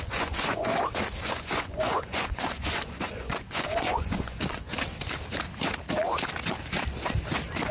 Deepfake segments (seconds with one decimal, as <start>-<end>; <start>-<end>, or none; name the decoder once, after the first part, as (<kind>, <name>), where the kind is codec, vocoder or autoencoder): 0.0-0.7 (vocoder, Vocos); 1.2-4.7